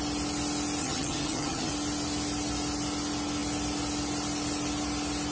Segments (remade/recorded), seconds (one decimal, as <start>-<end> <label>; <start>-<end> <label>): 0.0-0.8 recorded; 0.8-1.7 remade; 1.7-5.3 recorded